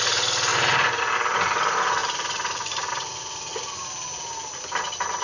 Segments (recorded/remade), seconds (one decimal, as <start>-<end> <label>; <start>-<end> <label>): 0.0-0.5 recorded; 0.5-1.0 remade; 1.0-2.0 recorded; 2.0-2.9 remade; 2.9-5.2 recorded

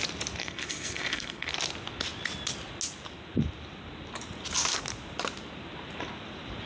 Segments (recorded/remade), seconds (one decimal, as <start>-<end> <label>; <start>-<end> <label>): 0.0-0.4 recorded; 0.4-1.5 remade; 1.5-6.7 recorded

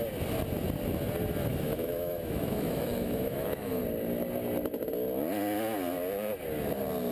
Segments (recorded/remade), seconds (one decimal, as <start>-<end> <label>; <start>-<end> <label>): 0.0-1.5 recorded; 1.5-3.8 remade; 3.8-7.1 recorded

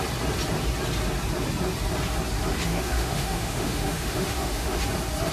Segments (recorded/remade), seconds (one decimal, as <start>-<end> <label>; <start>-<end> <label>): 0.0-2.7 recorded; 2.7-4.8 remade; 4.8-5.3 recorded

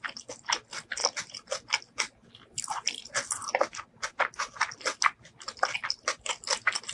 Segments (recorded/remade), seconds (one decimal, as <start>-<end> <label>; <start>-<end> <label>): 0.0-6.9 recorded

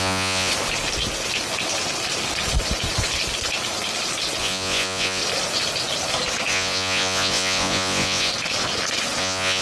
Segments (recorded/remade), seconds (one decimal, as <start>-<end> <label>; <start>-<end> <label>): 0.0-0.5 remade; 0.5-4.4 recorded; 4.4-5.2 remade; 5.2-6.5 recorded; 6.5-8.3 remade; 8.3-9.2 recorded; 9.2-9.6 remade

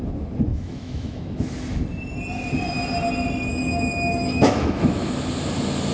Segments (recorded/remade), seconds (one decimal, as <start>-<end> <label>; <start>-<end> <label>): 0.0-0.5 recorded; 0.5-1.2 remade; 1.2-3.5 recorded; 3.5-5.1 remade; 5.1-5.9 recorded